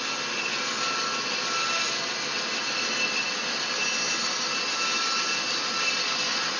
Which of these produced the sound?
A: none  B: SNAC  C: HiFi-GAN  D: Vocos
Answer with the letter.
A